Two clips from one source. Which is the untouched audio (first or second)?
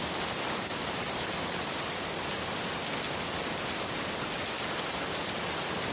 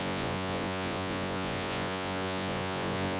first